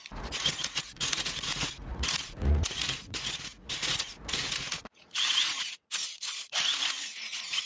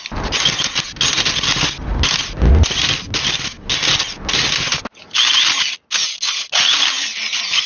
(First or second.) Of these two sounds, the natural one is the second